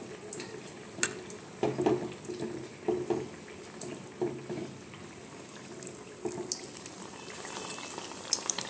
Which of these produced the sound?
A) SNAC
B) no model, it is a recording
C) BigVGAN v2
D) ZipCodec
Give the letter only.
B